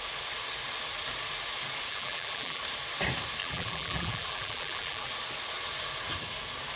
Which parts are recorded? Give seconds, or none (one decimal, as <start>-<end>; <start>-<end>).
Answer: 0.0-1.9; 2.6-3.4; 5.1-6.8